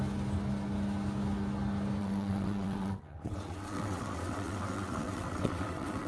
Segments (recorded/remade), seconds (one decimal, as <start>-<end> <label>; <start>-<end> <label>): 0.0-2.0 recorded; 2.0-6.1 remade